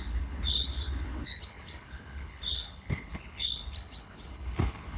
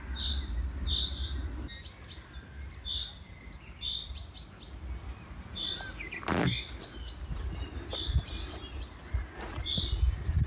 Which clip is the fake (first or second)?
first